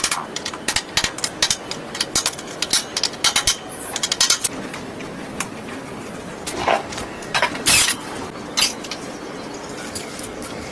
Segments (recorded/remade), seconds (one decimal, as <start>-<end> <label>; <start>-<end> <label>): 0.0-6.6 recorded; 6.6-7.5 remade; 7.5-9.8 recorded; 9.8-10.7 remade